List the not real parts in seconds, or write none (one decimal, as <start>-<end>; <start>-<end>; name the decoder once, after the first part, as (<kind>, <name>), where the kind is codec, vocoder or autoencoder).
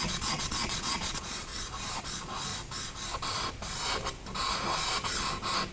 0.0-1.5 (vocoder, Vocos); 2.0-2.5